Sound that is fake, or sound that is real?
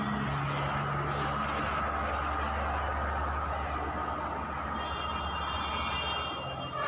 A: real